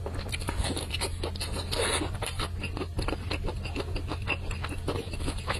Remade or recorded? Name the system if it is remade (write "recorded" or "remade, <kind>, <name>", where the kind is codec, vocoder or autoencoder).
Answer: recorded